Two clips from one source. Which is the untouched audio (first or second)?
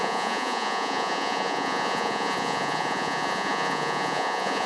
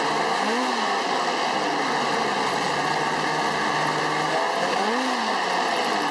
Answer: second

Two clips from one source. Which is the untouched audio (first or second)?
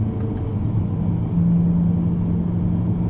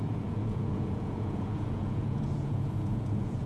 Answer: first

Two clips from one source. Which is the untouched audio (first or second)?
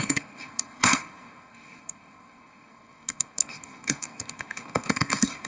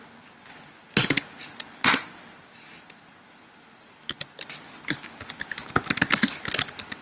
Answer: second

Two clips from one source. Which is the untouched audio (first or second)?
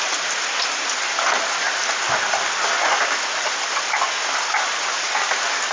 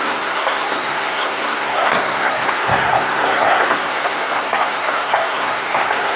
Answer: first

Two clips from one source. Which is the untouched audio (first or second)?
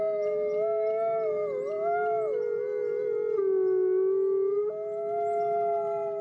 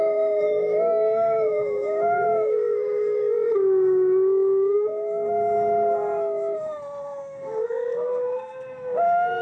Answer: first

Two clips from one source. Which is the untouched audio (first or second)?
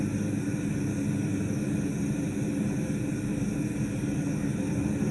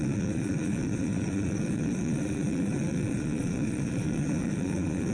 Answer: first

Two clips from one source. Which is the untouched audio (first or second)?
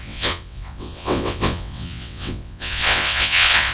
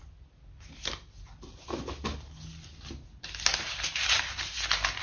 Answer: second